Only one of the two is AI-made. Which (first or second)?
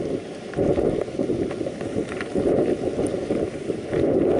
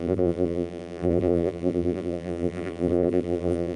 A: second